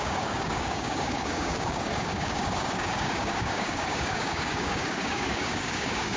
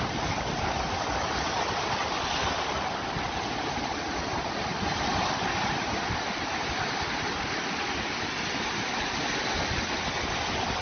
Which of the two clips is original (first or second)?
second